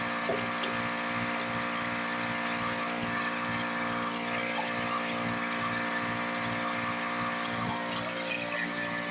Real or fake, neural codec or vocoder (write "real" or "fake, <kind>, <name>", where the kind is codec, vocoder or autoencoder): real